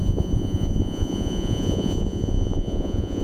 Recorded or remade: remade